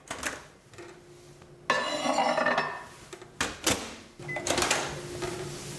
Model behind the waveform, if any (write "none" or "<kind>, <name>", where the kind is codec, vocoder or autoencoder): none